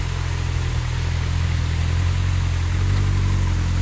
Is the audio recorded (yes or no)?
yes